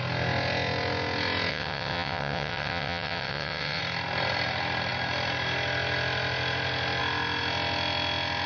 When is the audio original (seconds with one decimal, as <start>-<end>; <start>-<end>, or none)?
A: 0.0-1.5; 3.8-8.5